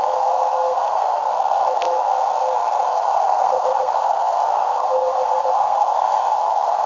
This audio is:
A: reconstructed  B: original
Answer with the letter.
A